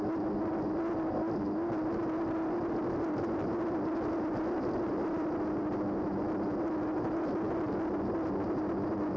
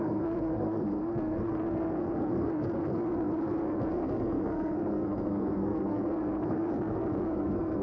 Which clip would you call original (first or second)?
first